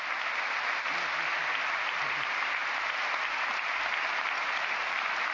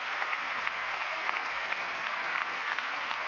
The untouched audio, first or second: first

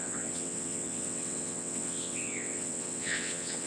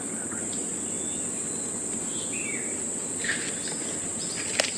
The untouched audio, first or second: second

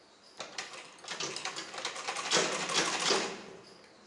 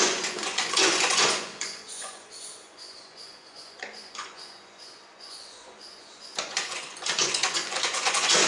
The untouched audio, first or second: first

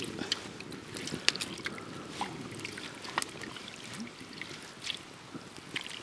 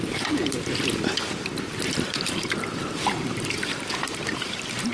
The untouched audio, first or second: first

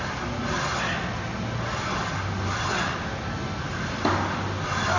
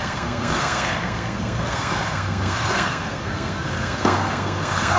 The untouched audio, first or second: first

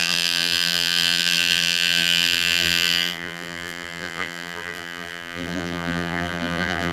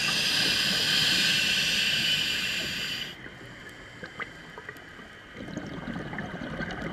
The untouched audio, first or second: second